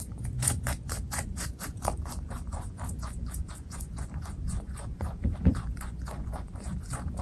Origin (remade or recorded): remade